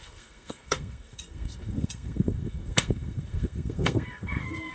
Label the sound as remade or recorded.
remade